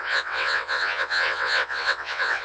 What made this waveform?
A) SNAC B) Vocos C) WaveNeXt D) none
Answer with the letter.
C